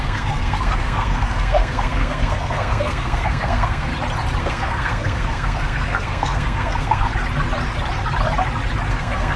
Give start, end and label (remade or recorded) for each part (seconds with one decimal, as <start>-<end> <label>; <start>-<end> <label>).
0.0-3.9 remade; 3.9-4.4 recorded; 4.4-7.1 remade; 7.1-8.9 recorded; 8.9-9.4 remade